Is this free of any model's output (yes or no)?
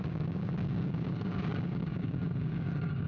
no